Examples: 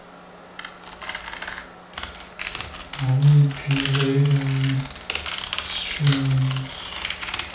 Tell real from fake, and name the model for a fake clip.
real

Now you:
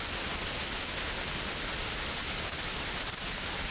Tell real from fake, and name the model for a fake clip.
real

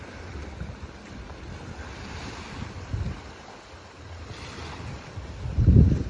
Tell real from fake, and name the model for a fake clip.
real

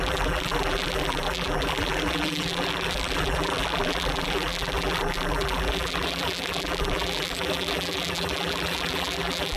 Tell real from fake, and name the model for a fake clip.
fake, vocoder, BigVGAN v2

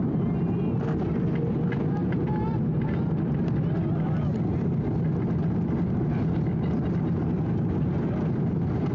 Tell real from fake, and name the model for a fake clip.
real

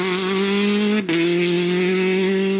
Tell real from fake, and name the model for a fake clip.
real